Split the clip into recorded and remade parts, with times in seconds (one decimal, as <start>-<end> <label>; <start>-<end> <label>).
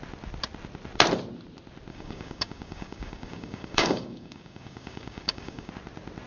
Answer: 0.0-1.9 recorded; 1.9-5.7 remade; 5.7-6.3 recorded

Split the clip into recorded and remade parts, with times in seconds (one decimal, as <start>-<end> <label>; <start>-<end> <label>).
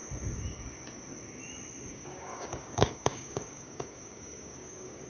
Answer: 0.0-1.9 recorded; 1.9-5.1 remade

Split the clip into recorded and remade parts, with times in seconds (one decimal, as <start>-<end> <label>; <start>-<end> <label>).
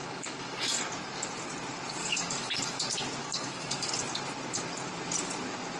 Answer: 0.0-0.8 remade; 0.8-2.0 recorded; 2.0-2.8 remade; 2.8-3.2 recorded; 3.2-3.9 remade; 3.9-5.8 recorded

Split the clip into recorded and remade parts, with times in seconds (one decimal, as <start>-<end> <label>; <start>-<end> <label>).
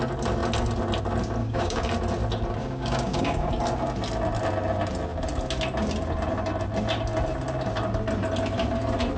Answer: 0.0-1.4 recorded; 1.4-1.9 remade; 1.9-2.6 recorded; 2.6-3.5 remade; 3.5-9.2 recorded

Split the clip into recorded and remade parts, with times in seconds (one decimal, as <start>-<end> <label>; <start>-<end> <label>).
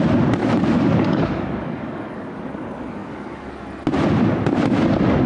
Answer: 0.0-0.4 recorded; 0.4-3.6 remade; 3.6-5.3 recorded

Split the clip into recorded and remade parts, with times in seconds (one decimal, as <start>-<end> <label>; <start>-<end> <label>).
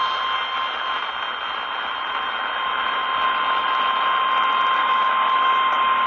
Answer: 0.0-4.8 recorded; 4.8-6.1 remade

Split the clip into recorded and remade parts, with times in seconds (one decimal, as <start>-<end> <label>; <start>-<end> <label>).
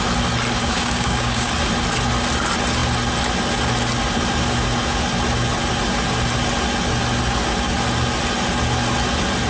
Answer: 0.0-0.6 recorded; 0.6-1.5 remade; 1.5-9.5 recorded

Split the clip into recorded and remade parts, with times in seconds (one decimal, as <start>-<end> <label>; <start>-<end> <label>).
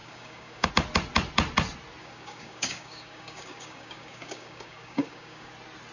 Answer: 0.0-0.7 remade; 0.7-2.0 recorded; 2.0-5.5 remade; 5.5-5.9 recorded